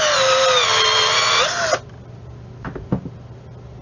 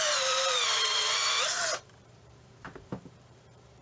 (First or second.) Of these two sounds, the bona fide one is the first